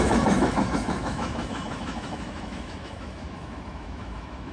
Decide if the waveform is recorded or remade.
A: remade